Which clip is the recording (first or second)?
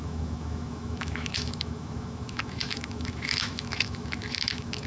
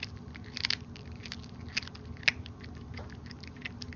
second